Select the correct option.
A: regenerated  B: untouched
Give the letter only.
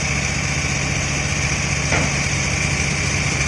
B